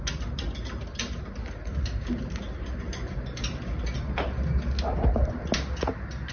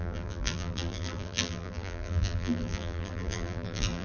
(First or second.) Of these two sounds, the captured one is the first